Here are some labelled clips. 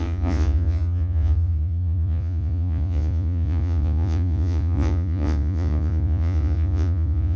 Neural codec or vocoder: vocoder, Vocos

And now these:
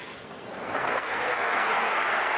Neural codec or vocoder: codec, SNAC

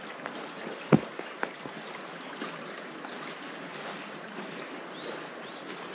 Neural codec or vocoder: none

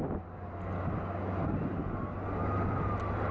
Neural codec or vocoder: none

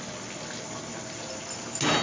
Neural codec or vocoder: none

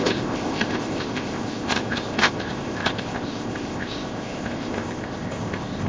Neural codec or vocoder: codec, ZipCodec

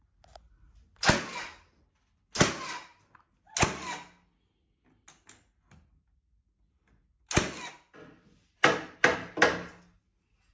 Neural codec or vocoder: none